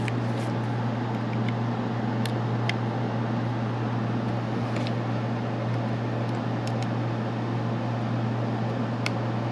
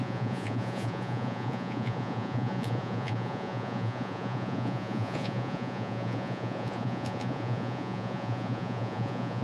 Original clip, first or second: first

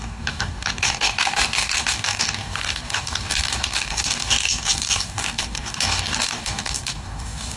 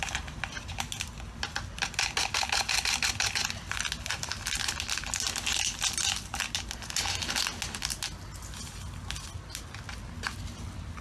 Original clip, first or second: second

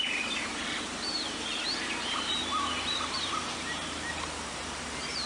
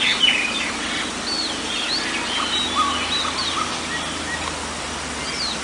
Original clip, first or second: second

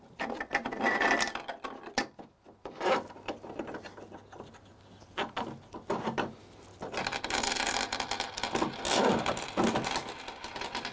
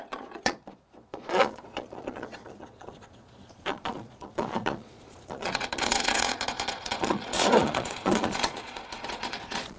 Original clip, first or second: first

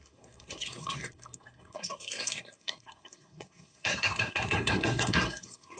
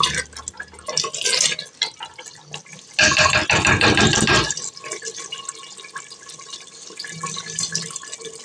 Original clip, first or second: second